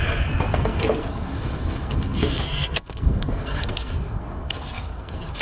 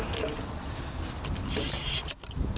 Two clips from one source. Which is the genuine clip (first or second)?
second